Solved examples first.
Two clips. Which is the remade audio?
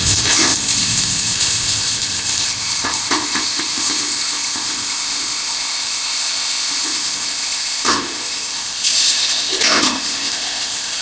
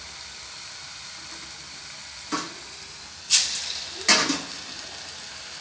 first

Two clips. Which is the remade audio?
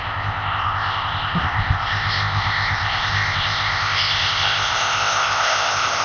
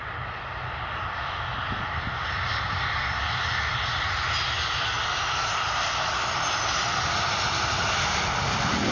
first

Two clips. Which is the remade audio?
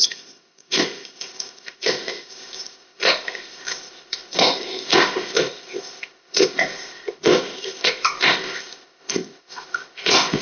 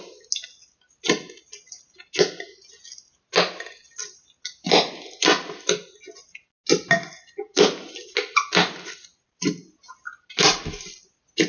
first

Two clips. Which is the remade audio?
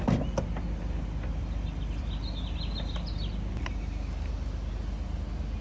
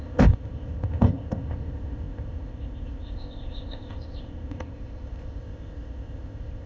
second